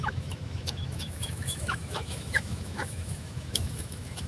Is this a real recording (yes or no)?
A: no